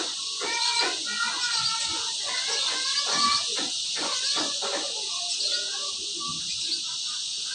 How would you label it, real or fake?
fake